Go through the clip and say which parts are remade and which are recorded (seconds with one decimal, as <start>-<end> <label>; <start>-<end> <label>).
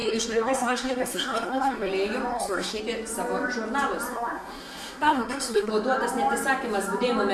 0.0-1.9 remade; 1.9-2.3 recorded; 2.3-2.8 remade; 2.8-4.1 recorded; 4.1-5.7 remade; 5.7-7.3 recorded